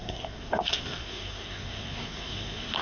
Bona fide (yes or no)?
no